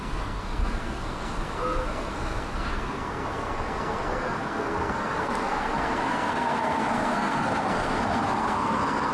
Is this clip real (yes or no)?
no